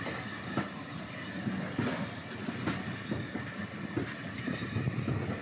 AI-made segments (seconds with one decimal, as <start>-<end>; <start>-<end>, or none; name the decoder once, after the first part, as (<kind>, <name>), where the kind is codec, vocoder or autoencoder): none